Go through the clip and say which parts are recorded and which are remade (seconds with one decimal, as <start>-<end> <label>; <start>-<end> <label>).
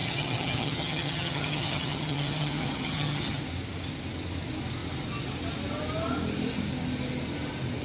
0.0-3.4 remade; 3.4-7.8 recorded